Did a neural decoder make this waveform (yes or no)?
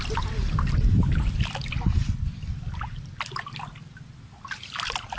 no